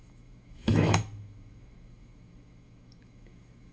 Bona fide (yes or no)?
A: no